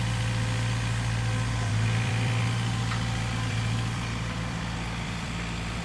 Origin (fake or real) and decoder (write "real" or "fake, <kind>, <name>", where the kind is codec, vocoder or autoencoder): fake, vocoder, BigVGAN v2